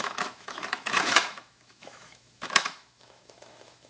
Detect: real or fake fake